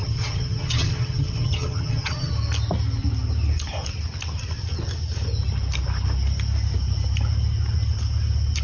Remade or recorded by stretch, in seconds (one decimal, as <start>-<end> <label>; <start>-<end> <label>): 0.0-2.3 remade; 2.3-8.6 recorded